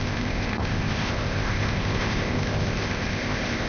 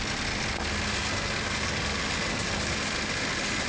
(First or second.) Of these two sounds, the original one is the second